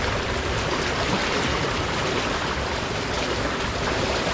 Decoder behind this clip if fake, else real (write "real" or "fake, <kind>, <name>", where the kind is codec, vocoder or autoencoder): real